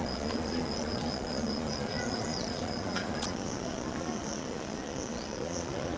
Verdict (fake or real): fake